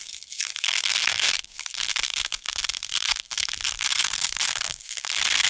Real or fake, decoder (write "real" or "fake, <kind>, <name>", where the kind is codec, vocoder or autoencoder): fake, codec, SNAC